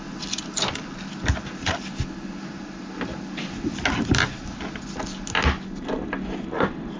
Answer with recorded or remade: recorded